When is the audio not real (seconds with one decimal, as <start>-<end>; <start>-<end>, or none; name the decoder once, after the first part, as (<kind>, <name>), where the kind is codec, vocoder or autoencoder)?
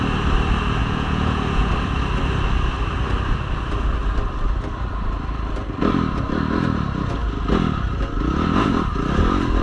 0.8-1.7 (vocoder, Vocos)